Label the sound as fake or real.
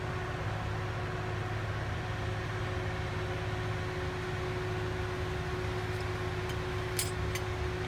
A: real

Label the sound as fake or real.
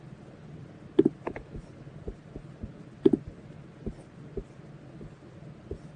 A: real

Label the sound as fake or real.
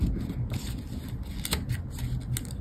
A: real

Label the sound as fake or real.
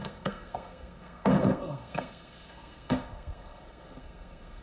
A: fake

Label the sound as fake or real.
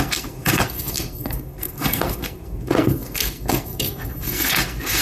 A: fake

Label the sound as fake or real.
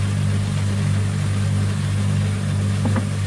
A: real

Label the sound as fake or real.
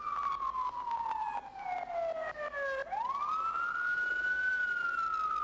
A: real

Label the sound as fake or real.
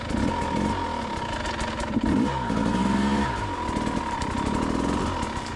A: real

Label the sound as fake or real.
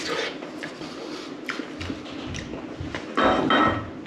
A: real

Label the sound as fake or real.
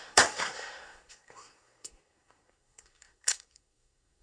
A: fake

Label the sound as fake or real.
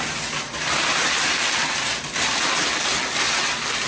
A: real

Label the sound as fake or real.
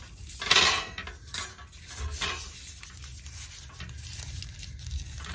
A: real